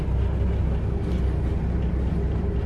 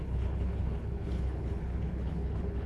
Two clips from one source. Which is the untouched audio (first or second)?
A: first